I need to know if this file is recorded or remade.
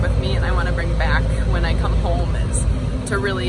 recorded